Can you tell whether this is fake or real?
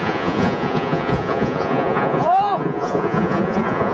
fake